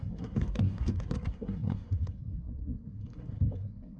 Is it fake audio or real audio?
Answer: fake